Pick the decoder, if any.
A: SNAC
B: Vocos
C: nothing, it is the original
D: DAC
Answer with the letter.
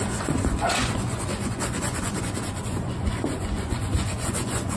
B